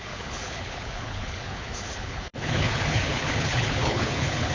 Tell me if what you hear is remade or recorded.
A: remade